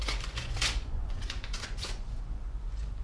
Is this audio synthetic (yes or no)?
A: yes